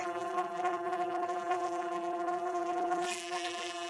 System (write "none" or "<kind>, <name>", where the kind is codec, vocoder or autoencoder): vocoder, BigVGAN v2